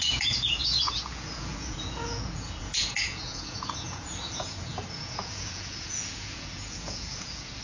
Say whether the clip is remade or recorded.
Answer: remade